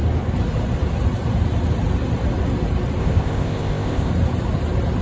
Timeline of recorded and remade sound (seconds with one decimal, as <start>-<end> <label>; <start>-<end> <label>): 0.0-3.0 recorded; 3.0-4.1 remade; 4.1-5.0 recorded